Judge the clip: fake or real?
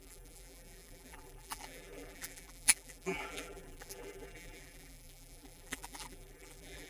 fake